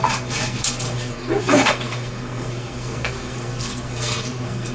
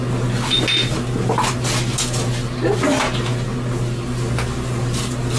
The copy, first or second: first